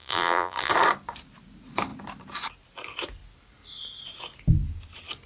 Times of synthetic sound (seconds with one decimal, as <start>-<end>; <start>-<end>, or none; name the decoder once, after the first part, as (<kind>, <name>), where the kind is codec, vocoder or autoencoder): 0.0-0.7 (vocoder, BigVGAN v2)